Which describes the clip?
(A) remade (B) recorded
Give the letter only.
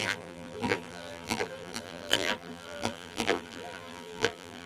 A